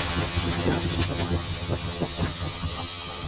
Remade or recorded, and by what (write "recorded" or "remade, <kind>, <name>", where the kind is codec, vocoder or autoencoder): remade, vocoder, HiFi-GAN